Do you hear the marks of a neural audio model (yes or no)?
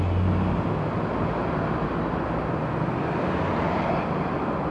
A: no